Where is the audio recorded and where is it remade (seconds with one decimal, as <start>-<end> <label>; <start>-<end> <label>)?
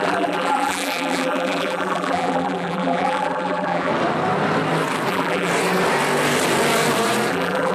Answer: 0.0-3.9 remade; 3.9-5.1 recorded; 5.1-5.5 remade; 5.5-7.3 recorded; 7.3-7.7 remade